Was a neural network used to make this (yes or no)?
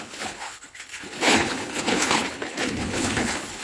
yes